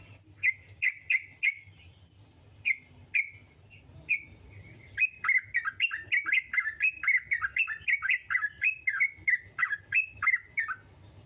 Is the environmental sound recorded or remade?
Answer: recorded